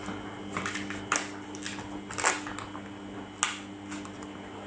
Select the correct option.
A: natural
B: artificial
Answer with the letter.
A